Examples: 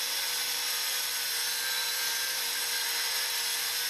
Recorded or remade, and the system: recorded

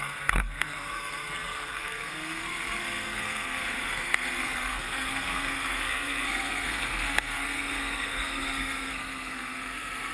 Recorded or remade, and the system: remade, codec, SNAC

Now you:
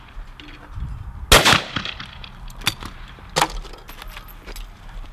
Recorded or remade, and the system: recorded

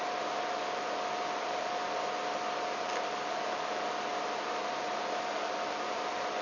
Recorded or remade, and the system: recorded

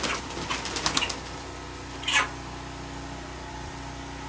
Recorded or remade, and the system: recorded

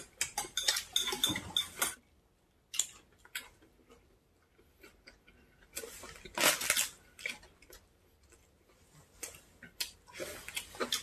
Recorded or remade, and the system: recorded